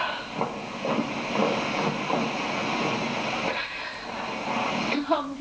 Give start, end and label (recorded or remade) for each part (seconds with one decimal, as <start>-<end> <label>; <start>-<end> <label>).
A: 0.0-5.4 recorded